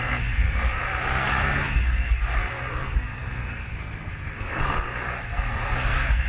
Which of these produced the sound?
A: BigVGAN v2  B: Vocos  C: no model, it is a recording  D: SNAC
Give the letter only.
D